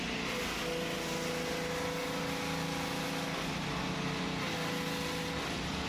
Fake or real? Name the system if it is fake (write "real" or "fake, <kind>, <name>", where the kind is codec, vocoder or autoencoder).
real